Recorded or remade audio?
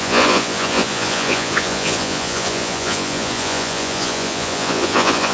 remade